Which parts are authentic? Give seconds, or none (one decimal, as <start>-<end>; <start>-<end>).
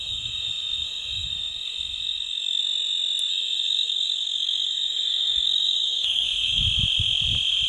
2.6-3.3; 6.6-7.7